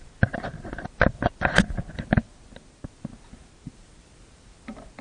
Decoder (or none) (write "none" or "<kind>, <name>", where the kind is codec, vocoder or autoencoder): none